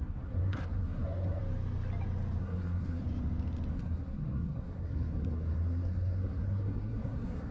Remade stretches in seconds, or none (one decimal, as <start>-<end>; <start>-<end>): 0.0-1.4; 2.4-3.0; 3.7-7.5